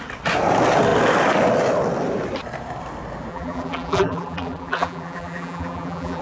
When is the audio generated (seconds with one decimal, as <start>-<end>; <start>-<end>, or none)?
3.3-6.2